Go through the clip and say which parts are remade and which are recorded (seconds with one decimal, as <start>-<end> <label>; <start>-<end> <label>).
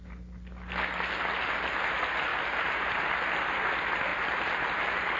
0.0-2.3 recorded; 2.3-3.6 remade; 3.6-4.1 recorded; 4.1-5.2 remade